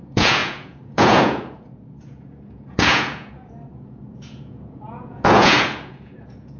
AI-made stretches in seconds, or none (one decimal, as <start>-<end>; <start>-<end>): 0.0-6.6